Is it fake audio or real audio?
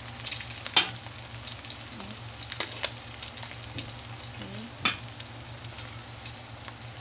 real